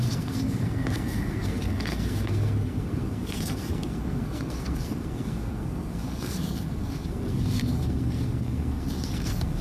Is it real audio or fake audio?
fake